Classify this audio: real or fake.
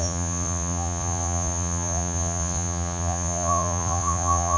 fake